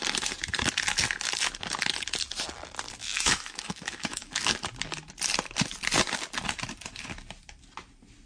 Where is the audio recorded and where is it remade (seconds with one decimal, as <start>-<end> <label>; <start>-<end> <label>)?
0.0-3.0 recorded; 3.0-4.5 remade; 4.5-8.3 recorded